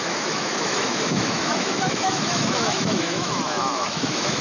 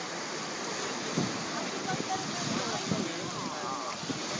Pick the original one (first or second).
second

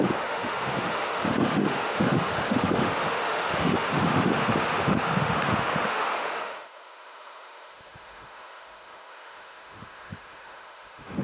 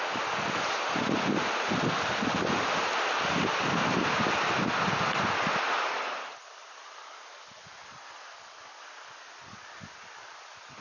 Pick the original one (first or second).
second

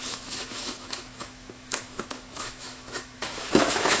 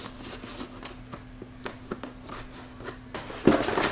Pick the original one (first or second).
second